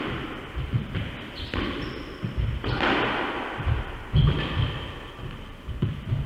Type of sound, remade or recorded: recorded